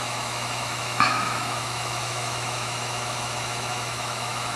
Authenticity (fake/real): fake